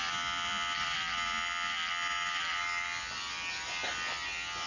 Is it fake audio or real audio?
fake